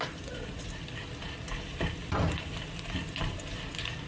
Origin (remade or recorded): recorded